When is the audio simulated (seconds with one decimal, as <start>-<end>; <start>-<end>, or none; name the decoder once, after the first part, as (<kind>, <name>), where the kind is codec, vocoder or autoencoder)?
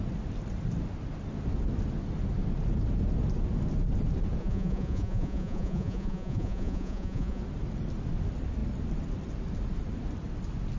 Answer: 4.4-7.4 (vocoder, Vocos)